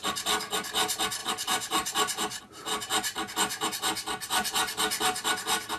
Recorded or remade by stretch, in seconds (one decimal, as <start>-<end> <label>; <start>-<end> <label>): 0.0-1.2 recorded; 1.2-2.4 remade; 2.4-5.8 recorded